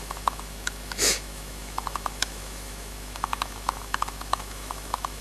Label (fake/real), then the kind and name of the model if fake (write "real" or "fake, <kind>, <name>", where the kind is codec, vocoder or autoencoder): fake, autoencoder, DAC-VAE